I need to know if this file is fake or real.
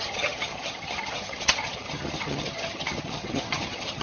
fake